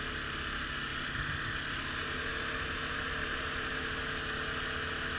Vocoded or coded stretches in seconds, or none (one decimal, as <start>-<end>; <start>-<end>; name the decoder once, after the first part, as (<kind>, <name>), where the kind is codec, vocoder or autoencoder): 0.9-4.0 (vocoder, BigVGAN v2)